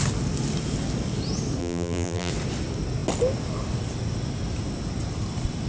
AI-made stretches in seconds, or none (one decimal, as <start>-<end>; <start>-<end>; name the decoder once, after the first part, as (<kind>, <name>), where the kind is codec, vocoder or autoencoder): 1.6-2.3 (vocoder, BigVGAN v2)

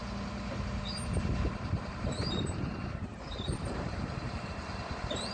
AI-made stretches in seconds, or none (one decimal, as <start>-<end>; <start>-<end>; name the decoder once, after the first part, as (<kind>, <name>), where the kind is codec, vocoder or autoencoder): 1.9-3.1 (vocoder, BigVGAN v2); 3.6-5.3